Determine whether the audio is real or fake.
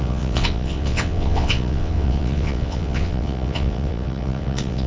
fake